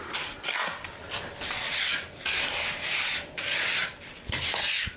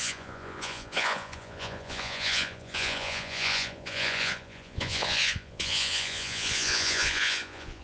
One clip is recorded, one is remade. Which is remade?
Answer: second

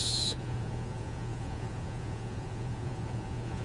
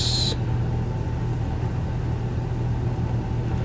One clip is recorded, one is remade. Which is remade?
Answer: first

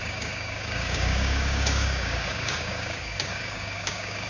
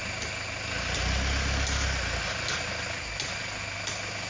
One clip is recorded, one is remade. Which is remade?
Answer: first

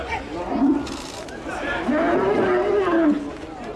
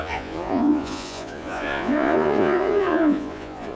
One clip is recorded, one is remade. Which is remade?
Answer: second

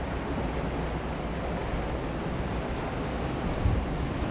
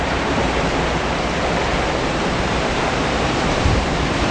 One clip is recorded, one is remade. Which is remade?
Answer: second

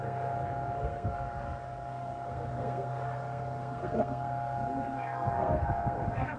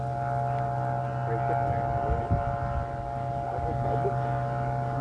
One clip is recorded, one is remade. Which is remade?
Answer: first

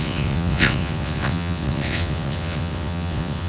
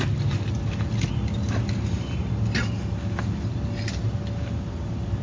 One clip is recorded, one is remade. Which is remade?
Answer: first